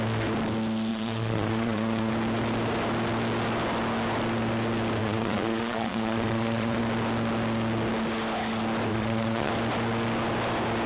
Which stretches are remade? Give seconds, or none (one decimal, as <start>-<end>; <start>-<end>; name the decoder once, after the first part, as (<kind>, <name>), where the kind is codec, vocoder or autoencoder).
0.9-2.1 (vocoder, Vocos); 5.0-6.8; 8.9-9.5